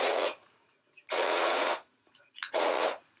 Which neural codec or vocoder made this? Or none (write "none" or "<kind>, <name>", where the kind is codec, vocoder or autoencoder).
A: vocoder, Vocos